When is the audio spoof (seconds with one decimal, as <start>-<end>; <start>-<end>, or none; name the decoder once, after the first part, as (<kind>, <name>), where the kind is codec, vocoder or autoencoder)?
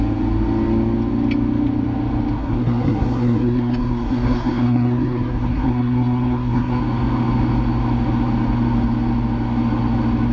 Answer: 2.4-6.8 (codec, SNAC)